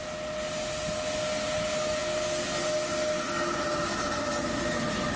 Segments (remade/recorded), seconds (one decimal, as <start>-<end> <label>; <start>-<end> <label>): 0.0-5.2 recorded